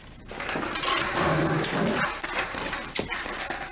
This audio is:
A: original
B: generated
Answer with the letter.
A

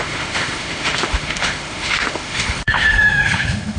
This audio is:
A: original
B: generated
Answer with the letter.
B